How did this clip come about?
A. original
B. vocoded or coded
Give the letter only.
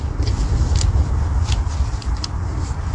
B